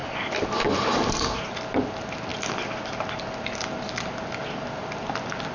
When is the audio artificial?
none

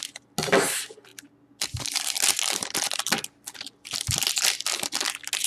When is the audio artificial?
none

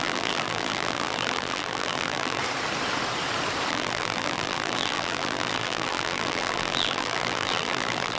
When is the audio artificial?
0.0-2.4; 3.7-8.2

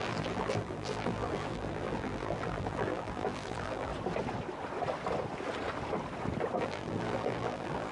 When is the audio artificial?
0.0-3.9; 6.6-7.9

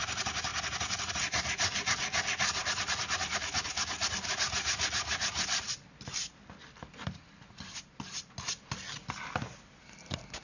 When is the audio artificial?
none

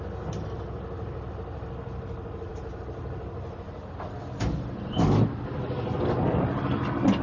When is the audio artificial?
none

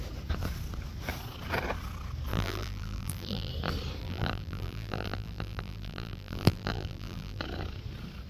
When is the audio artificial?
2.3-3.5; 4.0-7.4

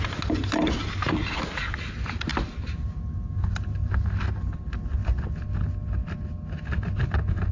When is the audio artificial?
2.3-3.0